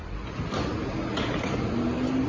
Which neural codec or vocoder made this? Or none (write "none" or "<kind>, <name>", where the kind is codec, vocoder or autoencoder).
none